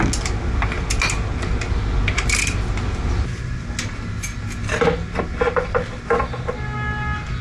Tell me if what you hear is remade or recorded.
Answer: recorded